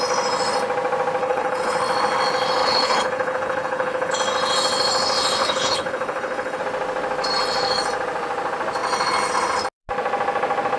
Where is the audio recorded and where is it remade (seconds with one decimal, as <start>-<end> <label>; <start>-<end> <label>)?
0.0-1.2 recorded; 1.2-1.8 remade; 1.8-2.6 recorded; 2.6-4.1 remade; 4.1-5.4 recorded; 5.4-6.6 remade; 6.6-10.8 recorded